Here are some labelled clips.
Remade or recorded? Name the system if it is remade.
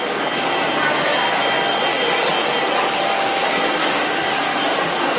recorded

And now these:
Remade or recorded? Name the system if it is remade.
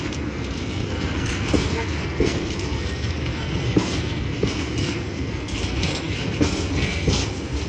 remade, codec, SNAC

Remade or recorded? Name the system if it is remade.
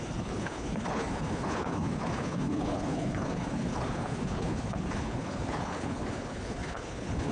remade, codec, HILCodec